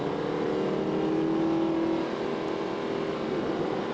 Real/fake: real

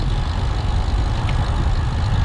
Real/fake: real